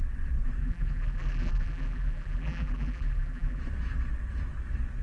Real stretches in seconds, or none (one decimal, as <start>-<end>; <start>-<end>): 0.0-0.6; 3.6-5.0